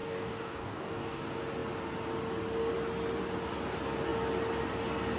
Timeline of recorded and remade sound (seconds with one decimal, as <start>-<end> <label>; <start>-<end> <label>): 0.0-1.2 remade; 1.2-5.2 recorded